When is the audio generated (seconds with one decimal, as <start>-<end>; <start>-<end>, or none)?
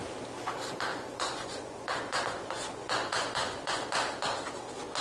0.9-3.9